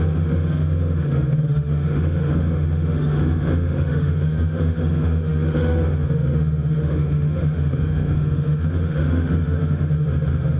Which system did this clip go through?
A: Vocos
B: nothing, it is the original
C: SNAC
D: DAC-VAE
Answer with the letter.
D